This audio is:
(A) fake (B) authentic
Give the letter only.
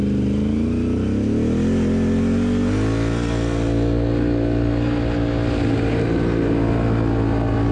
B